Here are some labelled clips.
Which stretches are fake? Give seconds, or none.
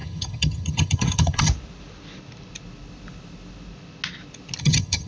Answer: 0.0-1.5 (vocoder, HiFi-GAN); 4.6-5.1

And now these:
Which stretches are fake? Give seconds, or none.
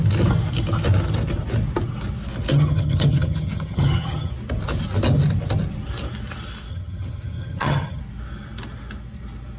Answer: 2.5-4.3 (vocoder, HiFi-GAN); 6.7-8.0